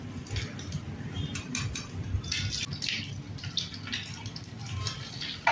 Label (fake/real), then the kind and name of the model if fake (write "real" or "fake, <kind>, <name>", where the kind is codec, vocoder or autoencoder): real